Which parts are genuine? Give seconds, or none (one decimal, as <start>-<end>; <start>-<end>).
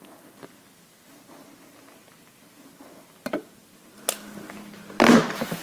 0.0-5.6